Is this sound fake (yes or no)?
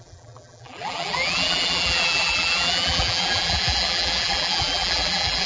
yes